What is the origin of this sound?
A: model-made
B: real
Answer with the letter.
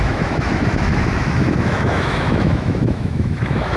A